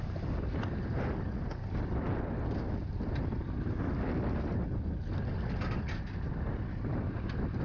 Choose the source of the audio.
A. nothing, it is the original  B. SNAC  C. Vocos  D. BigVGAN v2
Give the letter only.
A